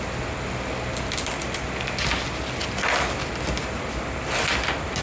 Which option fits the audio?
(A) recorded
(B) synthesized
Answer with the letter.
A